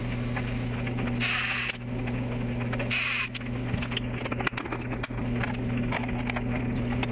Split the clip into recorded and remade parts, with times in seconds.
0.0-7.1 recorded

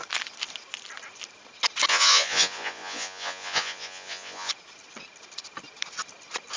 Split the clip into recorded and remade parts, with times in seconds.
0.0-1.9 recorded; 1.9-4.5 remade; 4.5-6.6 recorded

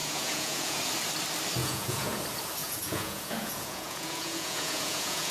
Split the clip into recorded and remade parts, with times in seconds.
0.0-0.8 remade; 0.8-1.6 recorded; 1.6-2.2 remade; 2.2-2.6 recorded; 2.6-5.3 remade

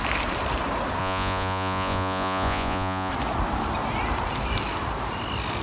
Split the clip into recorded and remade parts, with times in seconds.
0.0-1.0 recorded; 1.0-3.1 remade; 3.1-5.6 recorded

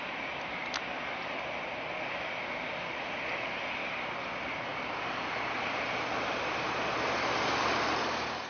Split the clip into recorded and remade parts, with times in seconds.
0.0-8.5 recorded